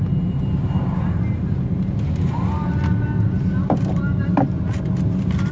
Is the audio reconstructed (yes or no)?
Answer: no